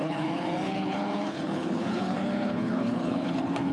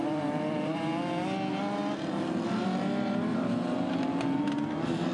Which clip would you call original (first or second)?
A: second